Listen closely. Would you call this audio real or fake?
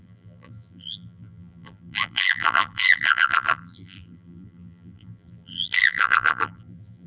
fake